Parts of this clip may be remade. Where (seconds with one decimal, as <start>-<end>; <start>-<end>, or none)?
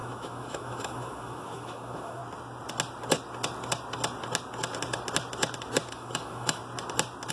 0.0-2.2; 5.9-6.6